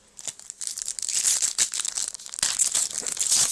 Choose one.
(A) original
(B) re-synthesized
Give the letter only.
A